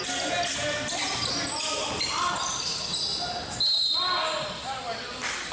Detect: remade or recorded recorded